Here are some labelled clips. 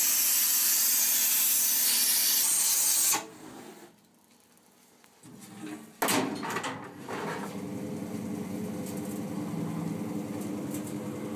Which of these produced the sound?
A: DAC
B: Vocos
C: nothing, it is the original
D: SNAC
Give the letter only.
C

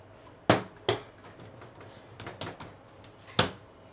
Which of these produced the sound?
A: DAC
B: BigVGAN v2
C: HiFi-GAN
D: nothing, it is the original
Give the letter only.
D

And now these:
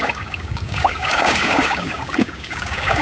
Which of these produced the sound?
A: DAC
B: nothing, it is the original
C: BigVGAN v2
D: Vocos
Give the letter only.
A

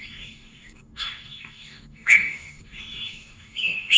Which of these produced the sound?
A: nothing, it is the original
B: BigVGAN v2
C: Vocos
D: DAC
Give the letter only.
D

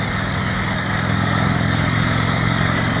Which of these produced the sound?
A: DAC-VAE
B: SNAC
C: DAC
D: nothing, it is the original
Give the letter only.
C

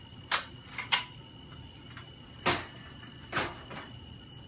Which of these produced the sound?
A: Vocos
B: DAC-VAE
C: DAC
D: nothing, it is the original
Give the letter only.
D